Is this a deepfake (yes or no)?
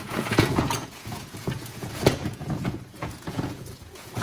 yes